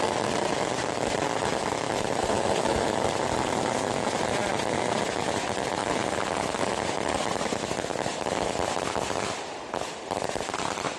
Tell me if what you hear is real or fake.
real